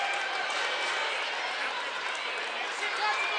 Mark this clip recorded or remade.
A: recorded